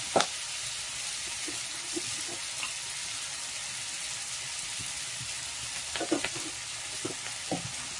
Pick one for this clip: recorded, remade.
recorded